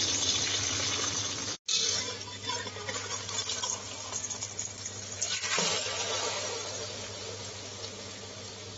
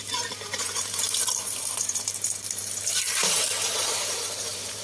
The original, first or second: first